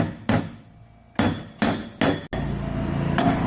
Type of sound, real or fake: real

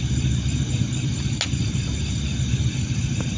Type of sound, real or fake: real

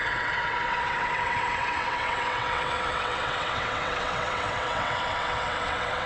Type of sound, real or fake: fake